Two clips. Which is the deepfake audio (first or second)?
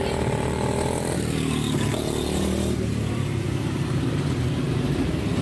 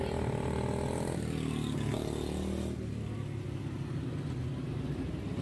first